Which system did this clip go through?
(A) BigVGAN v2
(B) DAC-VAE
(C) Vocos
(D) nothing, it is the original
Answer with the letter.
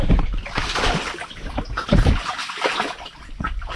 D